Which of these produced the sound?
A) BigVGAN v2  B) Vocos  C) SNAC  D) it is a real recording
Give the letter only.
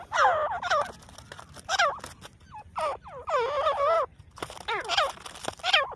D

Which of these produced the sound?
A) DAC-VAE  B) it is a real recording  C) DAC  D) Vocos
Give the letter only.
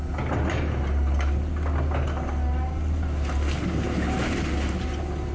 B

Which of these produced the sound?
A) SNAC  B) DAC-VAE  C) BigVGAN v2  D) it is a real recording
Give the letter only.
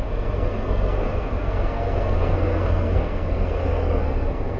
A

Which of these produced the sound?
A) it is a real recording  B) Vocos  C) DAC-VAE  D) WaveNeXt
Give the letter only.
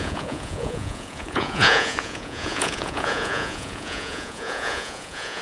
B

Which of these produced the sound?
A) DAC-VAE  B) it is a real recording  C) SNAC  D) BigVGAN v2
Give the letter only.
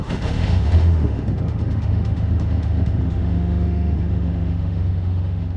A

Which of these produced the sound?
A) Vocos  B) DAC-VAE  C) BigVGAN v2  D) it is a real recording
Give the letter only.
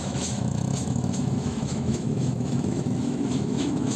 B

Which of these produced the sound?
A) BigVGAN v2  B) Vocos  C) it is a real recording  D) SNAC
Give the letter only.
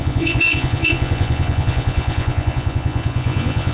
B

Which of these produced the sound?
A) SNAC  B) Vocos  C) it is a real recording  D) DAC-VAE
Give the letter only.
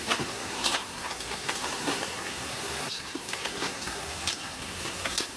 A